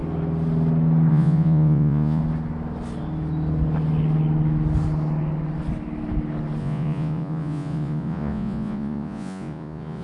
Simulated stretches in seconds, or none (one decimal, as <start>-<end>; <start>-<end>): 1.1-2.2; 6.6-10.0